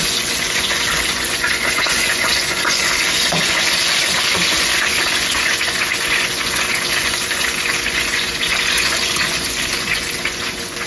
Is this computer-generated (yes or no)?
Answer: yes